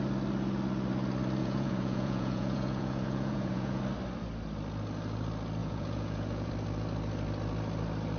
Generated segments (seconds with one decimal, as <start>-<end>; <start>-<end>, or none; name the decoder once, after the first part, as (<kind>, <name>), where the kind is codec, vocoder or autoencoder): 1.4-3.8 (vocoder, Vocos); 5.6-6.5